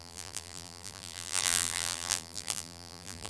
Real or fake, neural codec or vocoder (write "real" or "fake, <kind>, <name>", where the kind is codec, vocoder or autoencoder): fake, vocoder, BigVGAN v2